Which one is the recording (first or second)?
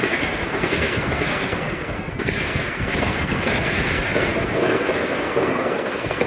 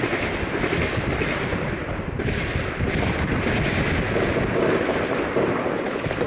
second